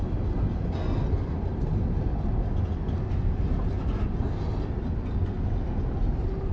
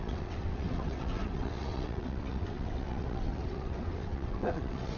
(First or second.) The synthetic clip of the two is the second